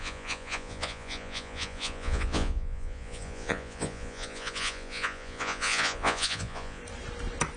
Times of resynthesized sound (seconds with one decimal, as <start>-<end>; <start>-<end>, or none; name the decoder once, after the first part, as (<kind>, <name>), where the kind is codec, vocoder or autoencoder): 0.0-6.8 (vocoder, Vocos)